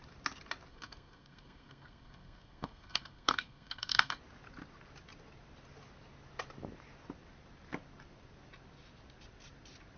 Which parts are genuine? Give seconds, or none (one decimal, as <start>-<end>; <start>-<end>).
0.0-0.7; 4.2-10.0